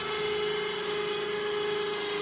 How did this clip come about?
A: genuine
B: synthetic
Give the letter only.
A